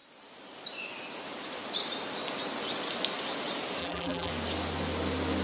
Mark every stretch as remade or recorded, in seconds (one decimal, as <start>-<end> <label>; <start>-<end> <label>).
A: 0.0-3.8 recorded; 3.8-4.3 remade; 4.3-5.4 recorded